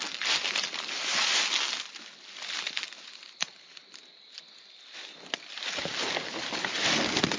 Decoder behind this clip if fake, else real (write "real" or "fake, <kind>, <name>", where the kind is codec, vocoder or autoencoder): real